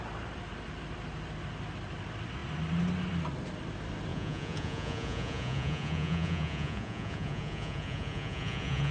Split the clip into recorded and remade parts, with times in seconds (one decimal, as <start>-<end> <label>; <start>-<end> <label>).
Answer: 0.0-4.1 recorded; 4.1-8.9 remade